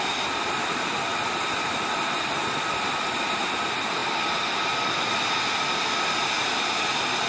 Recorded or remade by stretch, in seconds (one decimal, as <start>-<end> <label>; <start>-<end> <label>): 0.0-7.3 recorded